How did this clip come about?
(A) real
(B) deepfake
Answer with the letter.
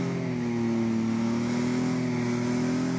A